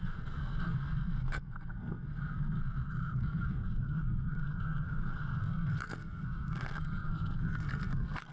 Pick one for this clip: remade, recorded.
remade